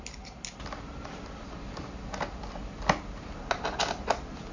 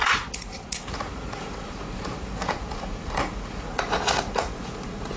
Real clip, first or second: first